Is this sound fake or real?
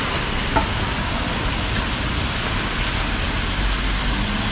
real